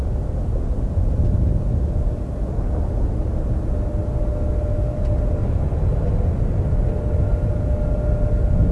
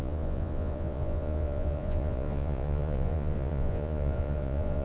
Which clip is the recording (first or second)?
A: first